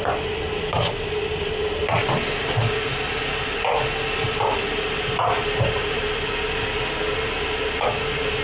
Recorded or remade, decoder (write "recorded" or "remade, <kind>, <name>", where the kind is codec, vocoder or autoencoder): recorded